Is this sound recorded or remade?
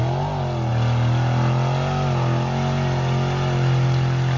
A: recorded